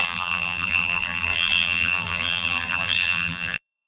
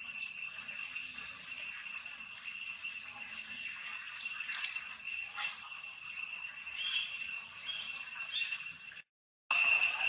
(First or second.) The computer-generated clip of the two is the first